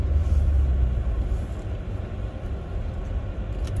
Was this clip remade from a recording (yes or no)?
no